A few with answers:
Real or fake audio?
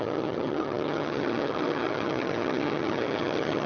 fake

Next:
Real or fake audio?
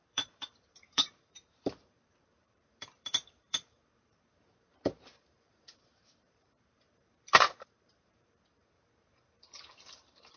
fake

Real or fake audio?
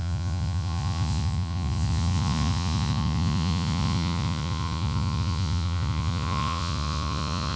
fake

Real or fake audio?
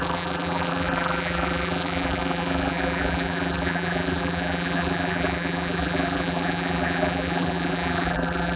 fake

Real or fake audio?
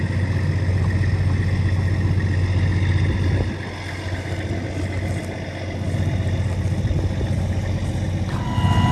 real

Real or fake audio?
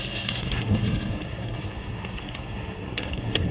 fake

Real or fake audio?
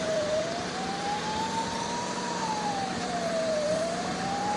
fake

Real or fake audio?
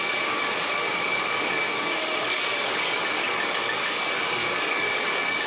fake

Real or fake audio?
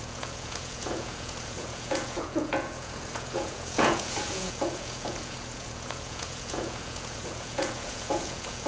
fake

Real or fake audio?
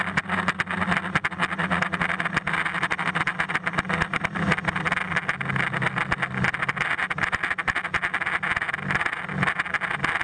real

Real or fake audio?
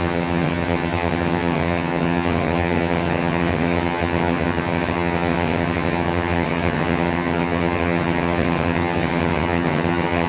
fake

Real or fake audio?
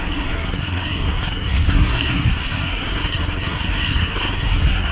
fake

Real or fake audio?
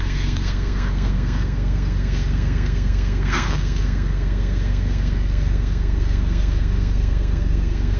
fake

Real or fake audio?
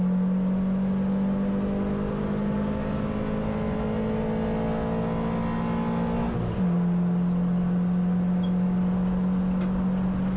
real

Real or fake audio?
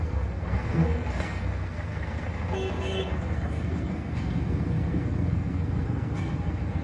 fake